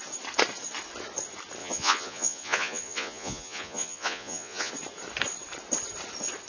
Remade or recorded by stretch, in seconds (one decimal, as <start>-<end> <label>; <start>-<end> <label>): 0.0-1.6 recorded; 1.6-4.7 remade; 4.7-6.5 recorded